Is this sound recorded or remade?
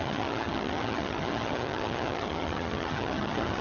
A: remade